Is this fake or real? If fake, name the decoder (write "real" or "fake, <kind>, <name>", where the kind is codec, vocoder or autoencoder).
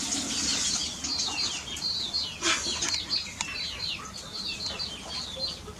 real